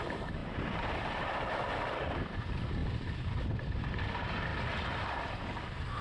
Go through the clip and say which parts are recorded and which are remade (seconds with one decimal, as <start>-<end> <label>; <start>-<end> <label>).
0.0-2.8 remade; 2.8-3.5 recorded; 3.5-4.5 remade; 4.5-5.0 recorded; 5.0-6.0 remade